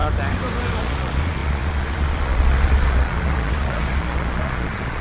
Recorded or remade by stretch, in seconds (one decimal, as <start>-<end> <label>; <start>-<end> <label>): 0.0-0.8 recorded; 0.8-5.0 remade